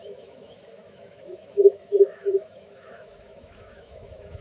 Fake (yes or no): yes